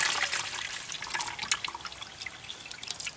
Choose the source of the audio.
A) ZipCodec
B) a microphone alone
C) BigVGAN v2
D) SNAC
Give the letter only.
B